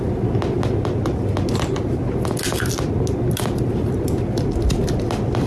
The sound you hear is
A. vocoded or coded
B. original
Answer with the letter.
B